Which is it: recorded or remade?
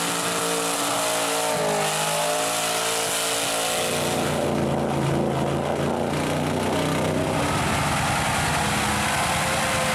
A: recorded